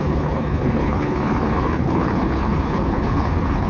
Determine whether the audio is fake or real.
fake